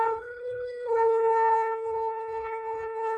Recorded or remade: remade